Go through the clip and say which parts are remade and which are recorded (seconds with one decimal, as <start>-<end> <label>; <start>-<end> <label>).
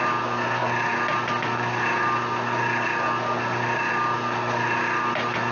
0.0-5.5 recorded